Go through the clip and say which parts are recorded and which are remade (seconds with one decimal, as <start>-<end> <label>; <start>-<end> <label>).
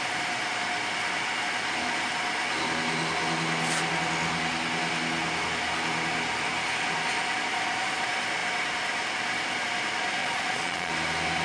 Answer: 0.0-10.2 recorded; 10.2-10.9 remade; 10.9-11.4 recorded